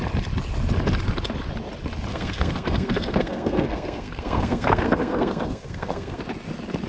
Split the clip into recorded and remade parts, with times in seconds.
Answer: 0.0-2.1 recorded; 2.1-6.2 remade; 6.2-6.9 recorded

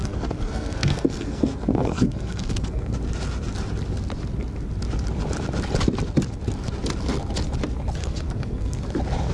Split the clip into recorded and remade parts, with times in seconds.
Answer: 0.0-2.9 remade; 2.9-8.0 recorded; 8.0-8.8 remade; 8.8-9.3 recorded

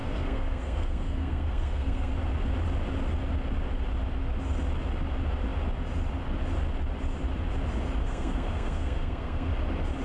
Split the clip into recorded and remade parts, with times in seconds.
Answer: 0.0-2.1 remade; 2.1-8.0 recorded; 8.0-9.5 remade; 9.5-10.0 recorded

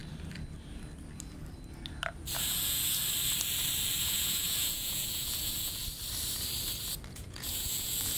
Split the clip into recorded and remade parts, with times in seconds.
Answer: 0.0-2.3 recorded; 2.3-3.0 remade; 3.0-4.0 recorded; 4.0-5.8 remade; 5.8-7.1 recorded; 7.1-8.2 remade

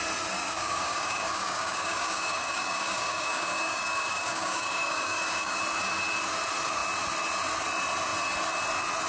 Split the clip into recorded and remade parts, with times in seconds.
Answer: 0.0-0.4 recorded; 0.4-5.6 remade; 5.6-9.1 recorded

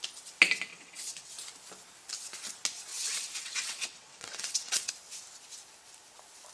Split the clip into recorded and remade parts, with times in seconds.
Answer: 0.0-0.7 recorded; 0.7-1.3 remade; 1.3-2.9 recorded; 2.9-4.9 remade; 4.9-6.5 recorded

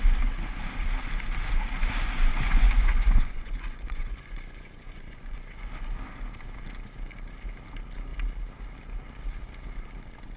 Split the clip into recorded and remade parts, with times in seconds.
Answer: 0.0-2.3 recorded; 2.3-5.7 remade; 5.7-10.4 recorded